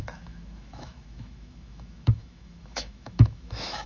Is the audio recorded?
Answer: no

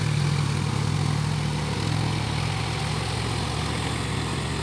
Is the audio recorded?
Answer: yes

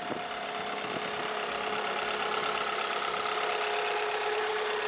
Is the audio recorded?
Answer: yes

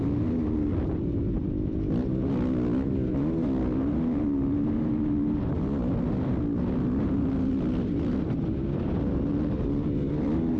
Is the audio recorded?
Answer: yes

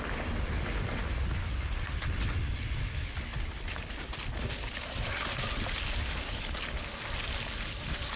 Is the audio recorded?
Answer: yes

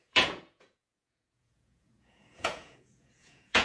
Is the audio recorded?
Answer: no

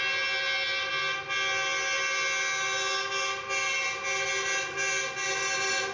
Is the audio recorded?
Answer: yes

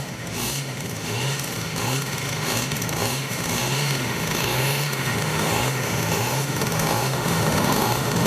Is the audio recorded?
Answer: no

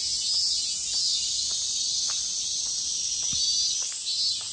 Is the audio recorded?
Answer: yes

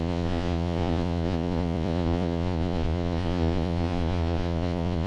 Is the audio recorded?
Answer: no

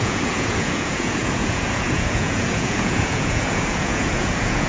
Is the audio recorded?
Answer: no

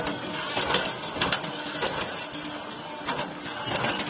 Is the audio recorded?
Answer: yes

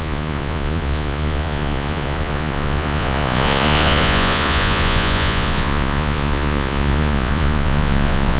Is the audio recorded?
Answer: no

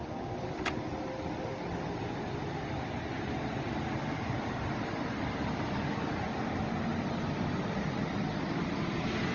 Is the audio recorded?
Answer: yes